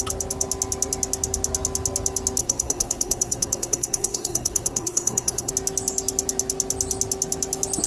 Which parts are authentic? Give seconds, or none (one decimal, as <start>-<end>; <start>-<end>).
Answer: 0.0-2.4; 5.5-7.9

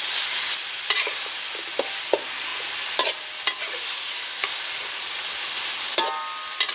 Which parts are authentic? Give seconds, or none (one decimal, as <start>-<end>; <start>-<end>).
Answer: 0.0-6.7